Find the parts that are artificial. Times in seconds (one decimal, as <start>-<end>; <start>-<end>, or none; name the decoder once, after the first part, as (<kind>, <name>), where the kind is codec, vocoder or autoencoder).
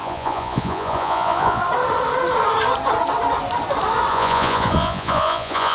0.0-1.6 (vocoder, Vocos); 4.1-5.7